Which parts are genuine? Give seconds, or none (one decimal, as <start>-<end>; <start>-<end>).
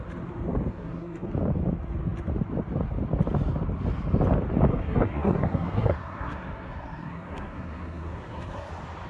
0.0-0.7; 1.3-4.7; 8.7-9.1